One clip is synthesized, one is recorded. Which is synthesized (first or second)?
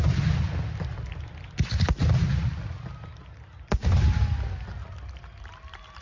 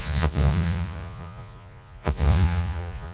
second